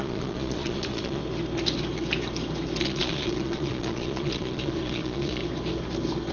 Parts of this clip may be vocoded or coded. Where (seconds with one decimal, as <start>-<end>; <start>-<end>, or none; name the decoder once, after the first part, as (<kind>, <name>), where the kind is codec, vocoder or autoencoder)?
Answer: 0.0-1.2 (vocoder, Vocos); 2.8-5.4